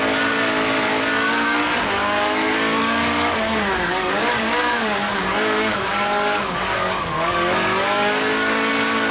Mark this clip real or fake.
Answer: fake